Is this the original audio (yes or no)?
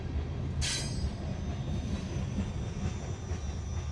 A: yes